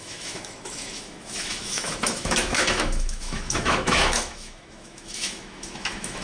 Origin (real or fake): fake